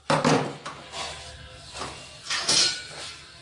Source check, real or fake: real